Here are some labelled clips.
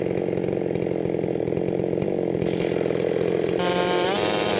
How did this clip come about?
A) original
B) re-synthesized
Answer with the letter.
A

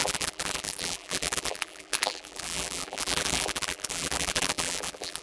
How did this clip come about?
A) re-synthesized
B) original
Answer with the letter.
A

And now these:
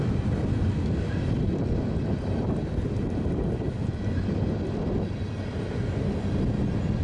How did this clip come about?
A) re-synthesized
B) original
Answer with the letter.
B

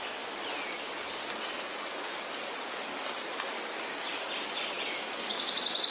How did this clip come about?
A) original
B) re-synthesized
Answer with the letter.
A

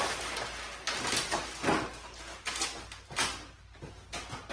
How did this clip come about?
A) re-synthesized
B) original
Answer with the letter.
B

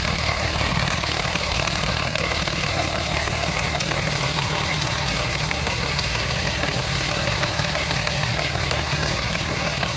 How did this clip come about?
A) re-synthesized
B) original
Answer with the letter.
A